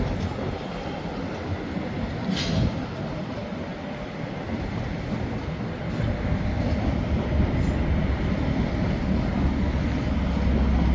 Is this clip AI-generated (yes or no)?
no